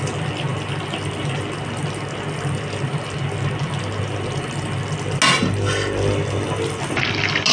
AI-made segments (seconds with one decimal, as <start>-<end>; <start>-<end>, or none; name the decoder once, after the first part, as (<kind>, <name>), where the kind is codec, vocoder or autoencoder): none